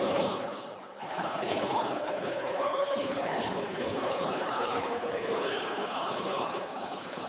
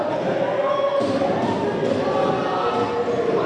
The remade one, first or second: first